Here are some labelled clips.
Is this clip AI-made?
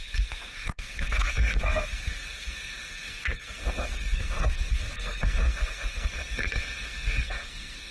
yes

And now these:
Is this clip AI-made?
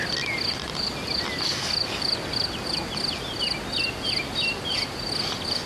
no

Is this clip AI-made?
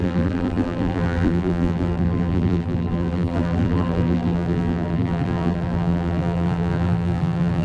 yes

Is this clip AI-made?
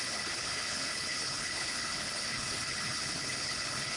yes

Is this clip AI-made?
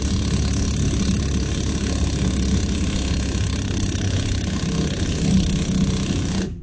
no